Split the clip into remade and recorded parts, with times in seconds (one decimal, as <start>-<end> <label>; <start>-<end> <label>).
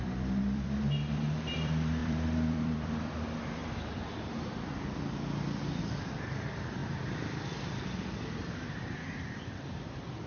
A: 0.0-3.6 remade; 3.6-5.8 recorded; 5.8-10.3 remade